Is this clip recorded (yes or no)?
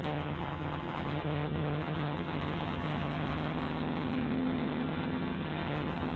no